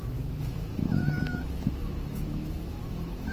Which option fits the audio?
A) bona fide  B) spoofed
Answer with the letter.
B